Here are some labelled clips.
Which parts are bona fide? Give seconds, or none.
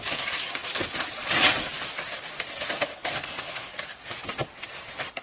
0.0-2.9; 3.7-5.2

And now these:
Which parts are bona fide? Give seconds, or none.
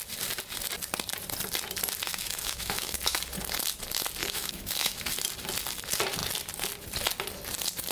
0.0-2.1; 3.2-4.2; 5.0-7.9